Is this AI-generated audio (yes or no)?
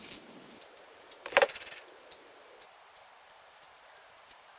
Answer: yes